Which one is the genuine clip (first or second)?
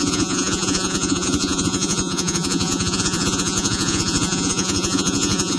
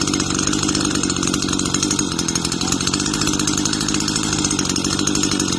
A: second